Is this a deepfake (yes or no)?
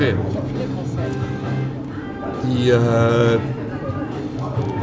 no